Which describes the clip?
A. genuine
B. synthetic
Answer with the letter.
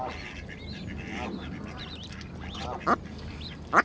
A